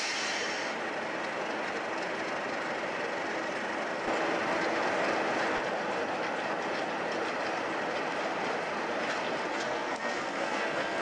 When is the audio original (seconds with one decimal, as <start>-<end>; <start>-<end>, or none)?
0.0-9.5